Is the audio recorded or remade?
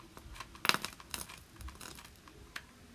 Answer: recorded